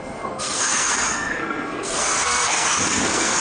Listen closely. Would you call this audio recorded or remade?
remade